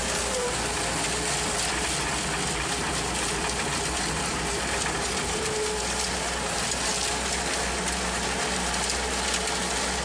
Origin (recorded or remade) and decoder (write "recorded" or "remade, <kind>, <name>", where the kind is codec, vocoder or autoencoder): recorded